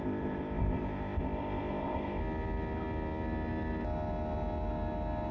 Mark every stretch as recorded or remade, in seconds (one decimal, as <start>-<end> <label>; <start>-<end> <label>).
0.0-2.2 remade; 2.2-5.3 recorded